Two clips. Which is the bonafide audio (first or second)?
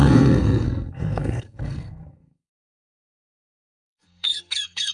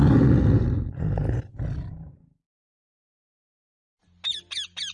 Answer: second